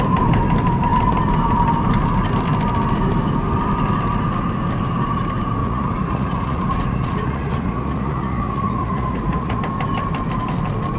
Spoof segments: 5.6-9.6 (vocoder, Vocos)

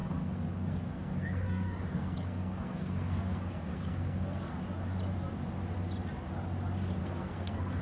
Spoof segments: 0.0-4.6 (codec, SNAC); 7.0-7.8

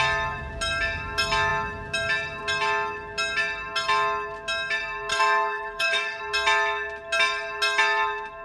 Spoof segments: 5.1-6.2 (codec, DAC)

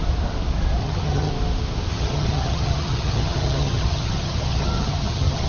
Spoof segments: 0.8-1.3 (vocoder, HiFi-GAN); 1.9-5.5

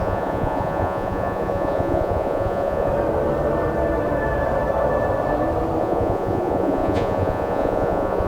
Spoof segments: 0.0-2.9 (vocoder, Vocos); 5.8-8.3

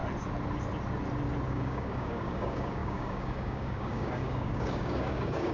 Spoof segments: 1.5-5.5 (codec, DAC)

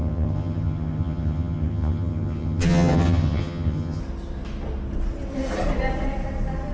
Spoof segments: 0.0-4.0 (vocoder, HiFi-GAN)